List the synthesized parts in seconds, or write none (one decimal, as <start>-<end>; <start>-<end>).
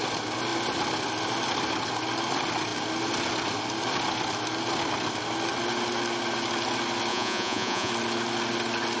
7.1-7.9